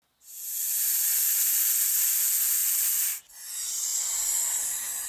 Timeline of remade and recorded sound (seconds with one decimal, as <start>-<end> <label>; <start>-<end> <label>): 0.0-5.1 recorded